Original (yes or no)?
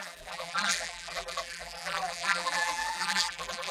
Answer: no